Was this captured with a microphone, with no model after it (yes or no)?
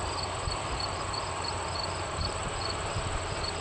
no